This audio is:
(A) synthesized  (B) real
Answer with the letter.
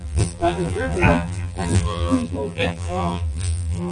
A